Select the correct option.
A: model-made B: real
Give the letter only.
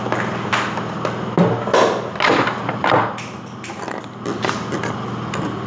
B